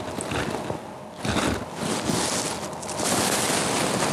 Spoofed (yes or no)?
no